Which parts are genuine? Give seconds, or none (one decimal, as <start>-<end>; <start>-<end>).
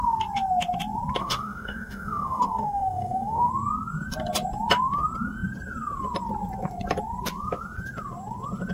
0.0-1.2; 3.5-8.7